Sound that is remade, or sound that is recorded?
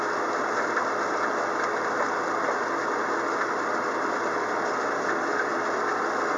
recorded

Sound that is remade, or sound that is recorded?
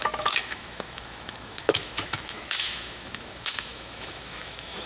remade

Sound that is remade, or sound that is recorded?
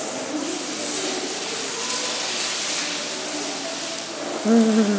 recorded